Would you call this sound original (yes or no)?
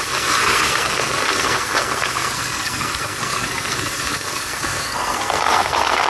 no